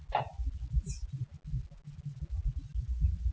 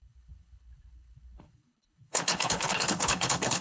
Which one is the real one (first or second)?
first